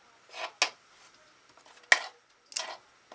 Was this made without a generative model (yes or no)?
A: yes